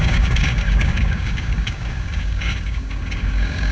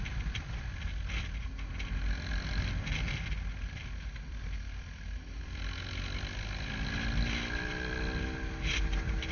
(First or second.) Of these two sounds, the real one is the second